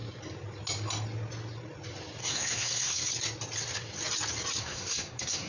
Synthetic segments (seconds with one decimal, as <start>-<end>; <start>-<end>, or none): 2.2-3.1; 4.6-5.5